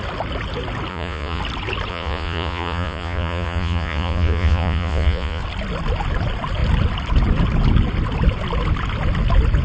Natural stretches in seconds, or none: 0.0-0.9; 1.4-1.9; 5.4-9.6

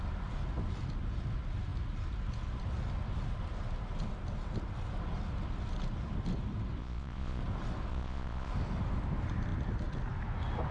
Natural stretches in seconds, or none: 0.0-6.8; 7.4-7.9; 8.5-10.7

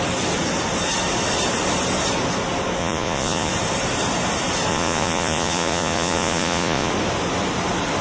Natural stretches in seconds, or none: 0.0-2.8; 3.5-4.7; 6.9-8.0

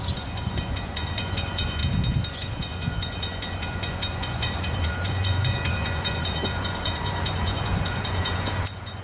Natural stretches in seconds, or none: 1.8-2.3

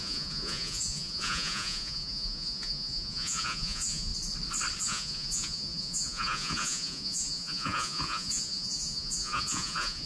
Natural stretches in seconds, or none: 4.1-4.8

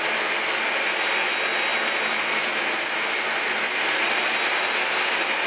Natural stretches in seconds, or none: 0.0-5.5

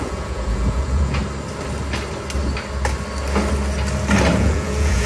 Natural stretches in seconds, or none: 1.2-4.3